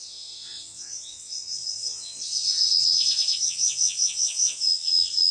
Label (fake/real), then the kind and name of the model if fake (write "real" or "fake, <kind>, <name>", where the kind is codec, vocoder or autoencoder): fake, vocoder, WaveNeXt